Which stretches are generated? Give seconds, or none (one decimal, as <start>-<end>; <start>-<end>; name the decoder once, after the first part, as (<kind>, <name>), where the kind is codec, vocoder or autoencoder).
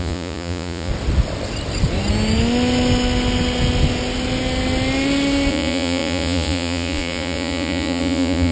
0.0-0.9 (vocoder, Vocos); 5.5-8.5